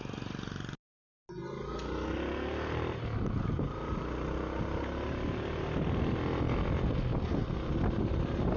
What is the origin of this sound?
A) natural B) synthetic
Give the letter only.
A